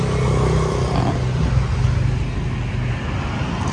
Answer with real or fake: real